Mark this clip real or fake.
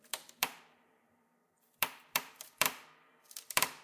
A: fake